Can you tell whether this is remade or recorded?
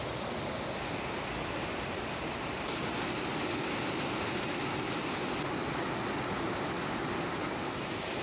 recorded